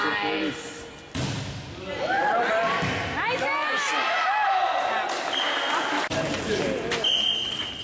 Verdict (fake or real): real